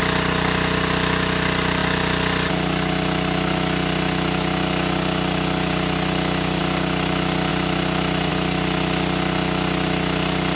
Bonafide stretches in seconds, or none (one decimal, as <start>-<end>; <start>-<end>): 0.0-10.6